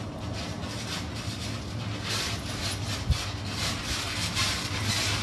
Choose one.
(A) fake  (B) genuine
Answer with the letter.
B